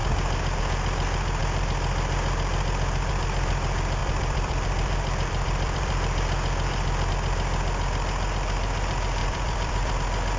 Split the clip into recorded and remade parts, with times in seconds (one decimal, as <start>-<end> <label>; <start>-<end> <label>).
0.0-4.0 recorded; 4.0-7.1 remade; 7.1-9.2 recorded; 9.2-10.0 remade; 10.0-10.4 recorded